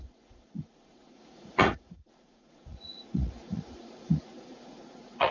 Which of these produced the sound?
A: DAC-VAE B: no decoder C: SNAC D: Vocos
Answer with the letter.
D